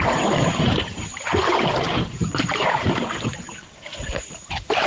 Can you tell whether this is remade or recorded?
remade